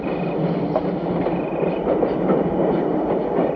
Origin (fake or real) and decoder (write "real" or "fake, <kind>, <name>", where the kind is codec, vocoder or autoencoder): real